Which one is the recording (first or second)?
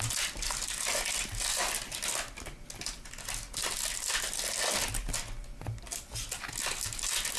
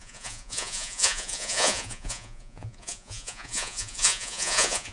first